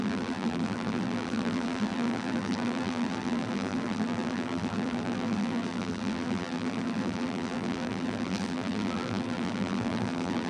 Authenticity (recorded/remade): remade